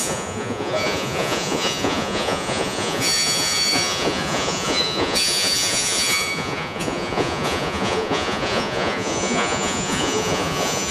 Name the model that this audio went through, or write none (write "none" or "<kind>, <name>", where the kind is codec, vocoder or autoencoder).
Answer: vocoder, Vocos